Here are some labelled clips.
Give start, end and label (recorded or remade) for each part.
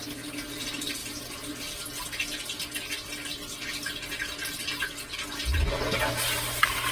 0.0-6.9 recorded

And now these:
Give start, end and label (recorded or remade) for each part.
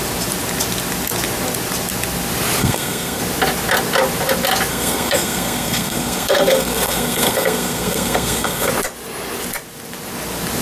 0.0-2.6 recorded; 2.6-3.2 remade; 3.2-4.7 recorded; 4.7-8.7 remade; 8.7-10.6 recorded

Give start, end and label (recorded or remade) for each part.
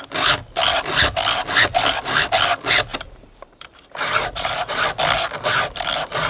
0.0-2.9 recorded; 2.9-4.8 remade; 4.8-6.3 recorded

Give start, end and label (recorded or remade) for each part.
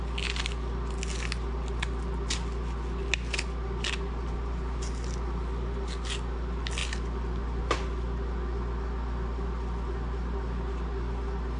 0.0-11.6 recorded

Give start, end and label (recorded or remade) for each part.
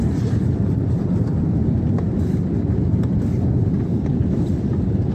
0.0-1.6 remade; 1.6-5.1 recorded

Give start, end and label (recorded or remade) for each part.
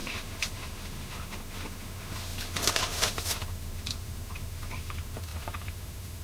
0.0-6.2 remade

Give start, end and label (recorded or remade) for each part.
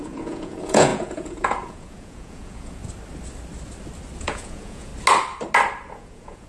0.0-2.8 remade; 2.8-4.2 recorded; 4.2-4.9 remade; 4.9-5.9 recorded; 5.9-6.5 remade